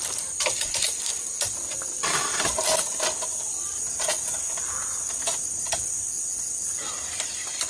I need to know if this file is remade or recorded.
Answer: recorded